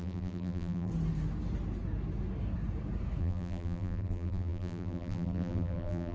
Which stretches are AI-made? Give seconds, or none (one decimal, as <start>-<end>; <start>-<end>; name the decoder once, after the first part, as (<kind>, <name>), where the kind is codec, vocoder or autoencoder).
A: 0.0-0.9 (vocoder, BigVGAN v2); 3.2-6.1